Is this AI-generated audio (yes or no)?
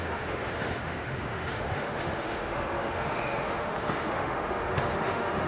yes